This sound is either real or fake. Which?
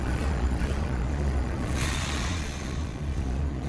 fake